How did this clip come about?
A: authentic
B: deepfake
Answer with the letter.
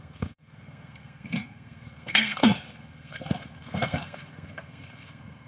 B